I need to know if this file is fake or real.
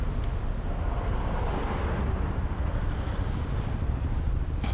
real